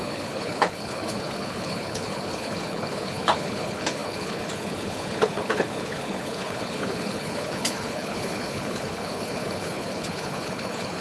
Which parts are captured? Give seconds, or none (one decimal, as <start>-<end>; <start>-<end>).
none

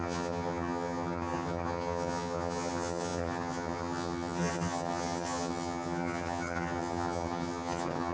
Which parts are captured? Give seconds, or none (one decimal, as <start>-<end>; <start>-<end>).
none

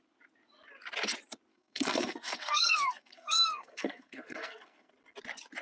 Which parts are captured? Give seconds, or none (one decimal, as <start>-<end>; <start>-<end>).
0.0-1.5; 4.9-5.6

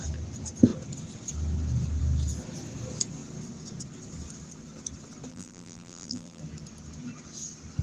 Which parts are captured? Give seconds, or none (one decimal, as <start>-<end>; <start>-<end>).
0.0-5.3; 6.4-7.8

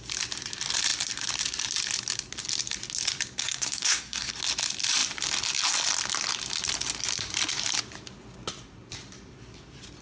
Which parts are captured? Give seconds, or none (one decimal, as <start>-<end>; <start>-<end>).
0.0-3.4; 4.3-10.0

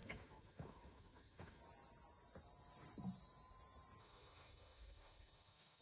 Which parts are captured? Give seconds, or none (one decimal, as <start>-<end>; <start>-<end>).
1.6-4.0

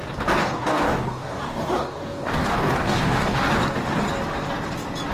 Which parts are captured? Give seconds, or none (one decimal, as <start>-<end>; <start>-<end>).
0.0-0.4; 3.5-5.1

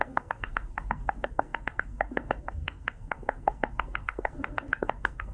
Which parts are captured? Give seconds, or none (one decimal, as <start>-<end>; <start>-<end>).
none